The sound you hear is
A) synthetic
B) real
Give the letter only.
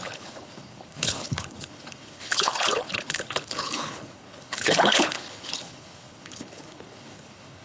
A